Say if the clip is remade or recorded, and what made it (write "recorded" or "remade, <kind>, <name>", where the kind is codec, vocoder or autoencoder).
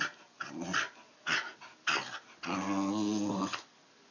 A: recorded